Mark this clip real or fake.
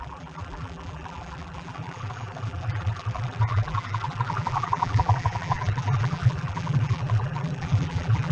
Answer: fake